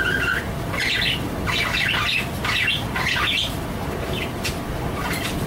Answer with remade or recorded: recorded